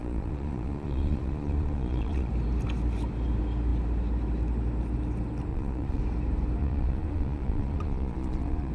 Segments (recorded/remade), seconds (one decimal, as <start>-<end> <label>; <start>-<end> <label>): 0.0-2.3 remade; 2.3-5.5 recorded; 5.5-6.0 remade; 6.0-6.6 recorded; 6.6-8.7 remade